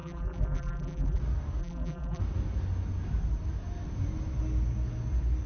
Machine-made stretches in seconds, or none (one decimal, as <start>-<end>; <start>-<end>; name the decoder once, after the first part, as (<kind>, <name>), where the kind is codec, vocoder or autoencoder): 0.0-1.2 (vocoder, BigVGAN v2); 1.6-2.2